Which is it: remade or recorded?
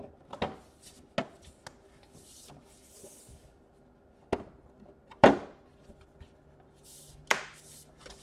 recorded